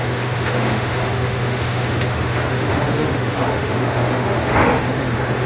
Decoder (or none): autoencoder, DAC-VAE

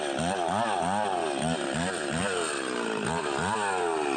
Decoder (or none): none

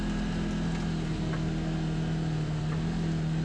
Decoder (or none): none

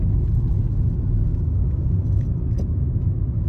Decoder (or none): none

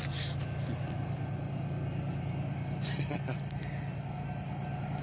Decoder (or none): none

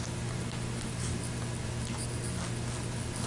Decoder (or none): none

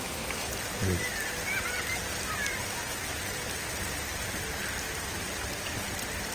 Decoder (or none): none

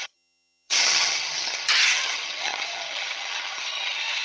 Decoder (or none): vocoder, HiFi-GAN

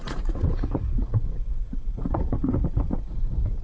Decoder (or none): vocoder, Vocos